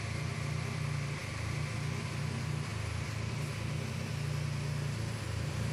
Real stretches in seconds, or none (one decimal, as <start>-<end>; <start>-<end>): 0.0-5.7